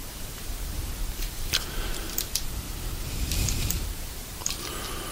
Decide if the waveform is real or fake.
fake